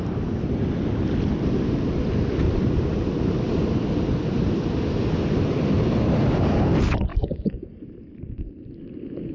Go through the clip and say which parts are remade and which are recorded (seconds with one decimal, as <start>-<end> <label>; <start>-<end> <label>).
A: 0.0-7.1 recorded; 7.1-7.7 remade; 7.7-9.3 recorded